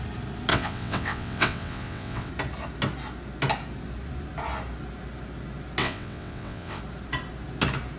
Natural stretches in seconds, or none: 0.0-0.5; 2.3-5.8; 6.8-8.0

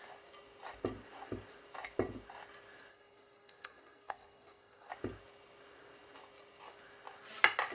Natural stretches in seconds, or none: 0.0-2.9; 4.9-7.7

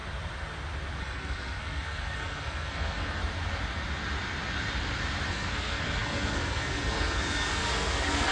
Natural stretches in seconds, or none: 0.0-1.0; 3.2-5.3

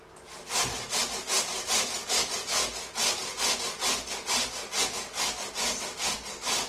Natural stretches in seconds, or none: 0.0-6.7

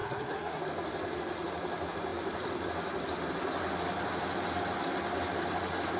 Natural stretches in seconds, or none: 0.6-6.0

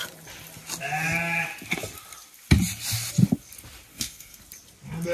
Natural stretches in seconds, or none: 0.0-3.9; 4.4-5.1

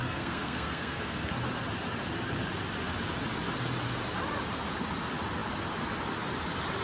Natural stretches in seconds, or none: 1.3-6.8

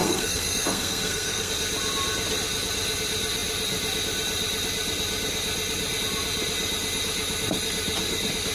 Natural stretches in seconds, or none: 1.5-8.5